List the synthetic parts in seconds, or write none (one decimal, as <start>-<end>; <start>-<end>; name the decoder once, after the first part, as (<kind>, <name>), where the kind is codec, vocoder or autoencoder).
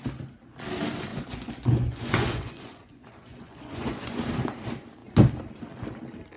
1.1-4.2 (vocoder, Vocos)